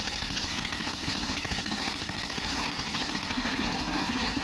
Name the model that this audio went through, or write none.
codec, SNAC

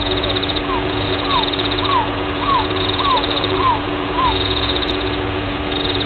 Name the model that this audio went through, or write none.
vocoder, Vocos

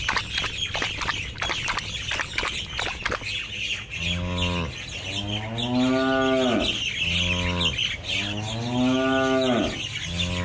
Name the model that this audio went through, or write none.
none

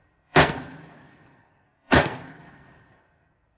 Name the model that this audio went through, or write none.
codec, SNAC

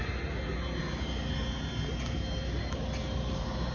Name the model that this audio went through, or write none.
none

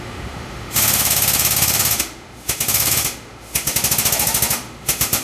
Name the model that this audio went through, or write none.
autoencoder, DAC-VAE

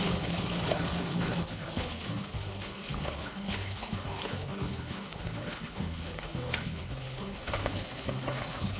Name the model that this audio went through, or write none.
codec, HILCodec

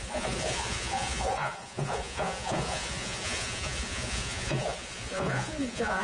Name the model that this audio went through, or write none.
vocoder, Vocos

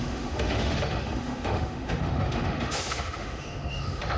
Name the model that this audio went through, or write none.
autoencoder, DAC-VAE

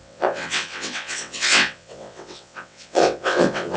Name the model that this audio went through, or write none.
vocoder, WaveNeXt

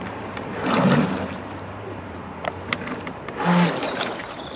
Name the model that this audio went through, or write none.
vocoder, BigVGAN v2